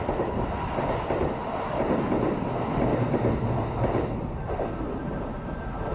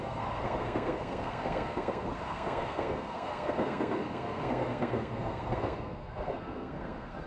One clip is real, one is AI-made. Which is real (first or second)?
first